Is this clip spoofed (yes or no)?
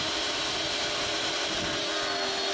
no